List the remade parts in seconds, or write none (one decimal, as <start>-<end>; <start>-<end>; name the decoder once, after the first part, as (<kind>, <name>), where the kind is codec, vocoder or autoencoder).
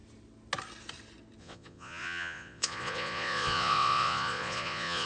1.4-5.1 (vocoder, Vocos)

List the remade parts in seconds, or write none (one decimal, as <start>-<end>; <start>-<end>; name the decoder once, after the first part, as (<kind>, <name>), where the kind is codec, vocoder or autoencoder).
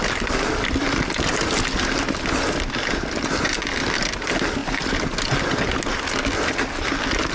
none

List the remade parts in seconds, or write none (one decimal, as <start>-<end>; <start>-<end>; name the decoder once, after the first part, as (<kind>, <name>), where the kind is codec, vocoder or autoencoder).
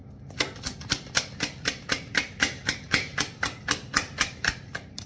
1.8-3.1 (vocoder, BigVGAN v2); 4.0-5.1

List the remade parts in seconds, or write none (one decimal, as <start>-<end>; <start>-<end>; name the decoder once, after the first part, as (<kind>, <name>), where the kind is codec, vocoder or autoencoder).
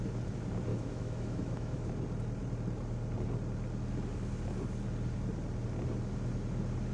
0.7-1.9 (autoencoder, DAC-VAE)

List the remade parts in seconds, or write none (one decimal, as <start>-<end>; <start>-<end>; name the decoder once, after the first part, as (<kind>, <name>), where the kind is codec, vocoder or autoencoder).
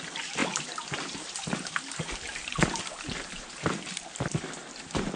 none